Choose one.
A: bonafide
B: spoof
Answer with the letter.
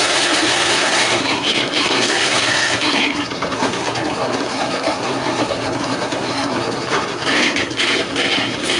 B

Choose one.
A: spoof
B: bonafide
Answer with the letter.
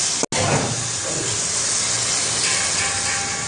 B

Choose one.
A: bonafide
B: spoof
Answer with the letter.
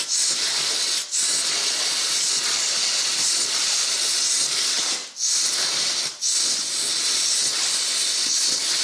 A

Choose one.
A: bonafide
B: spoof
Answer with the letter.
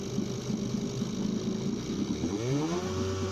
A